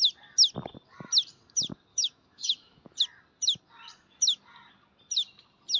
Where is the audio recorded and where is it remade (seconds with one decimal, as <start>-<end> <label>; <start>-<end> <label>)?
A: 0.0-1.9 recorded; 1.9-3.0 remade; 3.0-5.8 recorded